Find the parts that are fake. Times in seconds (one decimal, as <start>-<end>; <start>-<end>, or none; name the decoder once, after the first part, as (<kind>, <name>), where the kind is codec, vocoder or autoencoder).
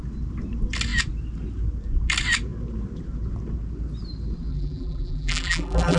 4.5-6.0 (vocoder, BigVGAN v2)